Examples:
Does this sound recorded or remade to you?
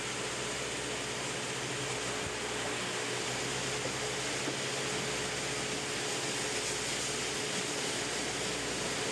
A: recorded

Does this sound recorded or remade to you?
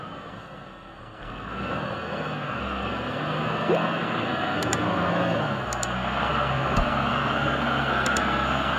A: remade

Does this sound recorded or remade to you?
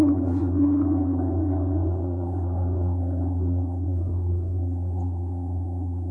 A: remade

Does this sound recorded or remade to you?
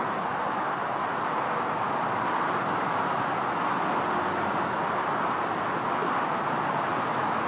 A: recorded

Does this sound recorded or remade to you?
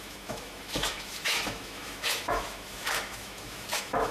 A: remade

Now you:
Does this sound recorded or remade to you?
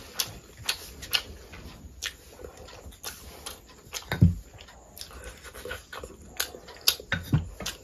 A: recorded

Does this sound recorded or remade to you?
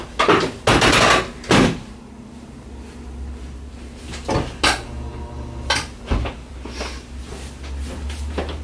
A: recorded